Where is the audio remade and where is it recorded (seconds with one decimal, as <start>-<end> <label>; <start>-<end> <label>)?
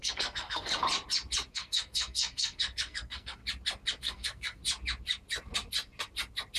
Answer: 0.0-0.7 remade; 0.7-1.5 recorded; 1.5-3.4 remade; 3.4-4.0 recorded; 4.0-4.6 remade; 4.6-6.6 recorded